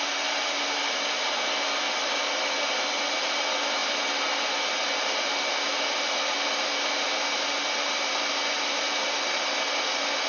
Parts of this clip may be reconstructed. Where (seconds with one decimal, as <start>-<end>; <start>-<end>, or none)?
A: none